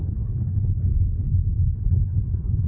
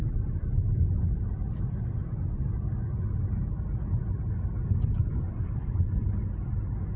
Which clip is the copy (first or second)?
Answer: first